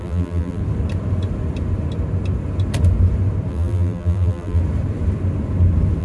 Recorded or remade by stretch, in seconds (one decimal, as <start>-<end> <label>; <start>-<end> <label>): 0.0-0.6 remade; 0.6-3.5 recorded; 3.5-4.6 remade; 4.6-6.0 recorded